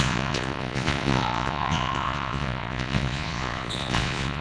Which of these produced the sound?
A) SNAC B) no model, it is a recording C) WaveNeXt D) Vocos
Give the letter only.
D